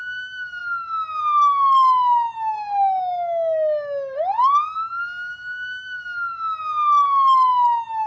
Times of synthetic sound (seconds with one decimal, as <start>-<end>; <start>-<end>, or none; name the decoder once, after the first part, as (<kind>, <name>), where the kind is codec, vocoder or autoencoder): none